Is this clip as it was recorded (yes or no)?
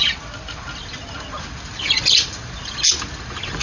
yes